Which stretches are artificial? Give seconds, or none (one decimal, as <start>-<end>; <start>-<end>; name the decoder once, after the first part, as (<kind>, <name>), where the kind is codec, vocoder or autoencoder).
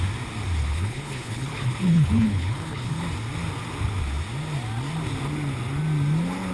0.6-3.0 (codec, HILCodec)